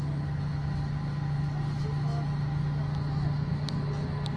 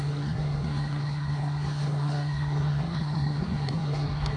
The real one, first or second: first